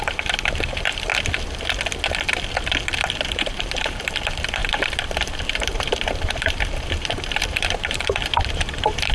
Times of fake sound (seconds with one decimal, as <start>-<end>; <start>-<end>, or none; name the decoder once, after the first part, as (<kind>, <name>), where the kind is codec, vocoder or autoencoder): 0.0-1.1 (vocoder, BigVGAN v2); 3.3-9.1